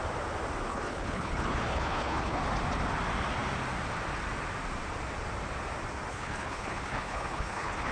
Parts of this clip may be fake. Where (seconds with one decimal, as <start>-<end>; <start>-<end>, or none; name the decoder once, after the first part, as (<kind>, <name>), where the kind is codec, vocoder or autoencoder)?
0.7-2.4 (codec, HILCodec); 6.1-7.9